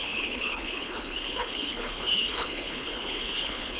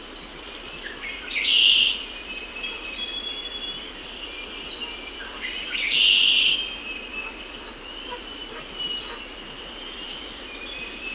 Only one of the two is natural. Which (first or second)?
second